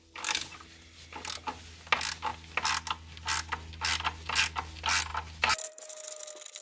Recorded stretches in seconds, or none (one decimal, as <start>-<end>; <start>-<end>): 0.0-6.6